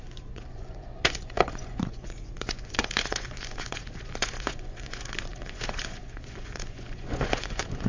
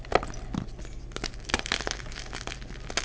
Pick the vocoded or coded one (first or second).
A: first